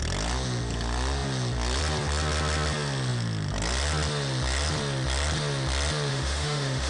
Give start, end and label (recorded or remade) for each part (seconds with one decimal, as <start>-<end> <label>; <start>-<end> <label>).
0.0-6.1 recorded; 6.1-6.9 remade